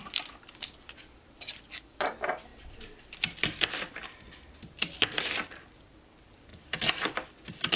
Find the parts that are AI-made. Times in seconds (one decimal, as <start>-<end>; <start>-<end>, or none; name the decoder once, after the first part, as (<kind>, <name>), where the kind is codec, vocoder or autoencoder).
0.0-0.7 (vocoder, BigVGAN v2); 2.5-3.7; 6.5-7.8